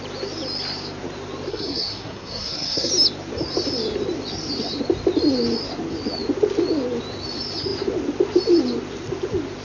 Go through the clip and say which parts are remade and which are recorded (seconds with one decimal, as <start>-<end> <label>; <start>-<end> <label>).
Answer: 0.0-1.5 recorded; 1.5-2.9 remade; 2.9-9.6 recorded